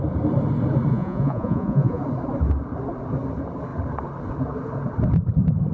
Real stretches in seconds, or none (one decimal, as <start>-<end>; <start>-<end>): 0.0-0.9; 2.0-5.7